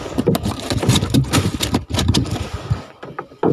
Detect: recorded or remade recorded